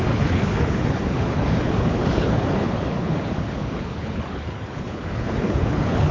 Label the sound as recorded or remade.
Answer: remade